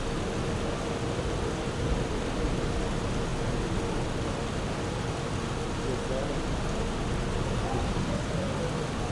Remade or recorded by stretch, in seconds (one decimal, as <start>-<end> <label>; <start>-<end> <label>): 0.0-9.1 recorded